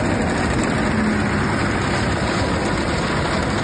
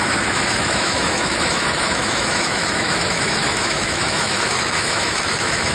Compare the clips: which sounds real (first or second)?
first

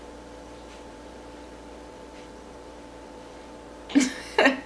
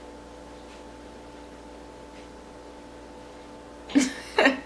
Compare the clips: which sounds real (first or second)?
second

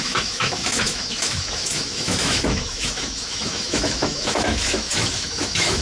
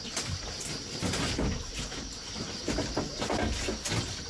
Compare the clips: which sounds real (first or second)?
second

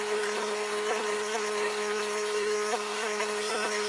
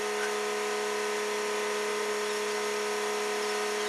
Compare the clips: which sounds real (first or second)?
second